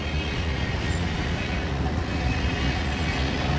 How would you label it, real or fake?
fake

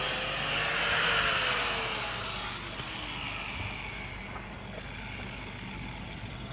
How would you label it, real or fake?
real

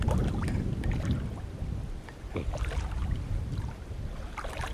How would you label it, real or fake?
real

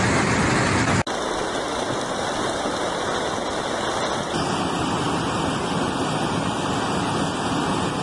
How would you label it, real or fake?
real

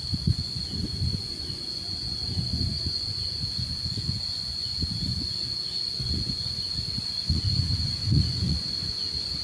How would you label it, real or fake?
fake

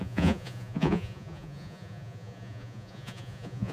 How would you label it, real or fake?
fake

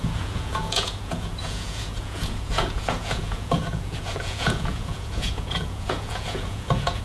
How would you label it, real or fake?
fake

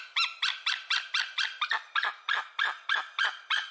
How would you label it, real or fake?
real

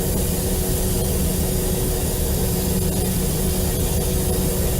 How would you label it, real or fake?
real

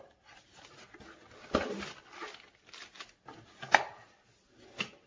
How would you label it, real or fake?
real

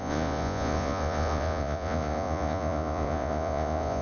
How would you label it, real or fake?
fake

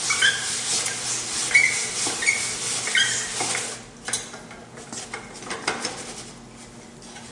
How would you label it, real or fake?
real